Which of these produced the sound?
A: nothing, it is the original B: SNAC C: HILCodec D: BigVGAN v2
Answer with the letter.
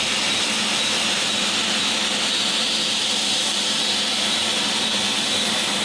A